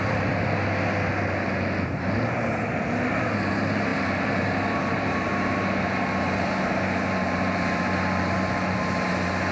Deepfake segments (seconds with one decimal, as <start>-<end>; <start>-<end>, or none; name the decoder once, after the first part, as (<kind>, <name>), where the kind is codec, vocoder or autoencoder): 0.0-0.4 (vocoder, BigVGAN v2); 2.7-9.5

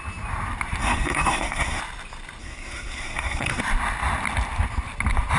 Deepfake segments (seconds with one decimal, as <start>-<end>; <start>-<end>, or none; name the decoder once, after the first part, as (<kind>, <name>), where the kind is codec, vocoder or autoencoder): 0.8-1.8 (codec, SNAC); 2.4-3.6

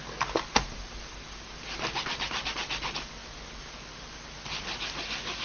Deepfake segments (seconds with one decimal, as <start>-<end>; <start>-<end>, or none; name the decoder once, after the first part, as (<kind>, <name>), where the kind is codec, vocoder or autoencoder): none

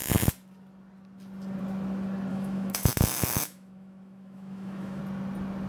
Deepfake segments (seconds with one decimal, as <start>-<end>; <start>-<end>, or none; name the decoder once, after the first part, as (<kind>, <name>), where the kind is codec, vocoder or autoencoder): 2.3-5.0 (autoencoder, DAC-VAE)

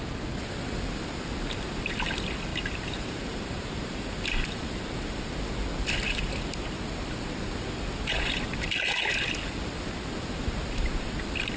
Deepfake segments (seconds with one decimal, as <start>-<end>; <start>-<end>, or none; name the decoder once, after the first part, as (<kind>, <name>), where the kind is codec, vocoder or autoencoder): 2.5-5.3 (vocoder, BigVGAN v2)